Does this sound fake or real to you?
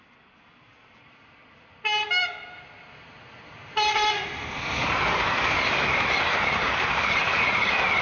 real